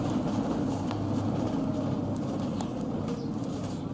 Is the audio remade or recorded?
recorded